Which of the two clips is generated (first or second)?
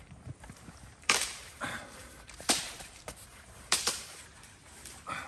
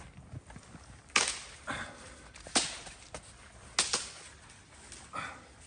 first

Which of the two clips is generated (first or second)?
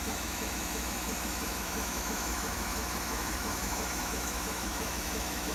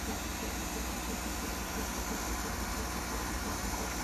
first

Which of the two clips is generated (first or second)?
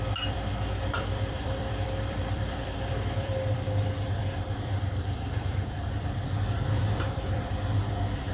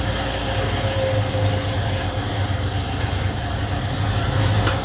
first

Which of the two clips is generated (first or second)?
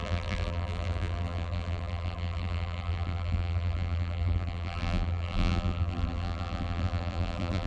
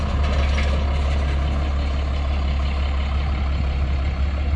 first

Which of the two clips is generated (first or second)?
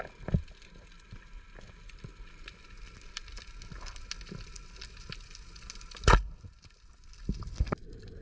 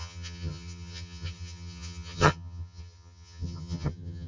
second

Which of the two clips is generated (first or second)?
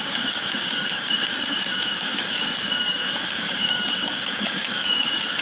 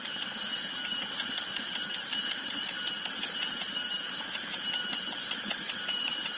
first